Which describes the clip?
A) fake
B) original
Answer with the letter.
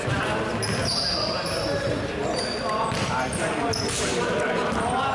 B